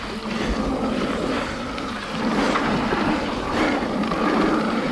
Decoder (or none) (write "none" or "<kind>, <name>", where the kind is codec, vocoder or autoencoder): none